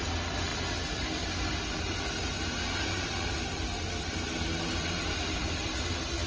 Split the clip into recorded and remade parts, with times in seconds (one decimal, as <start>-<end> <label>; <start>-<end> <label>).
0.0-6.3 recorded